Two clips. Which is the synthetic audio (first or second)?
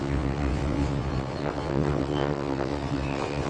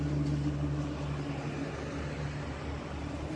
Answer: first